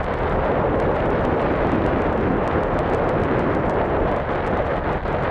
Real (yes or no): yes